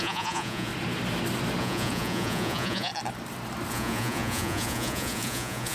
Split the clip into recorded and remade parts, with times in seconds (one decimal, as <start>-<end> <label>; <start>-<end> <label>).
0.0-0.7 remade; 0.7-1.6 recorded; 1.6-2.9 remade; 2.9-3.7 recorded; 3.7-5.7 remade